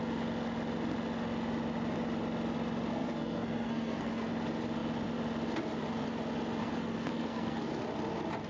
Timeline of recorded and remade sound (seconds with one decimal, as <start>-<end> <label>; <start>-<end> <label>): 0.0-2.9 recorded; 2.9-4.3 remade; 4.3-6.6 recorded; 6.6-7.7 remade; 7.7-8.5 recorded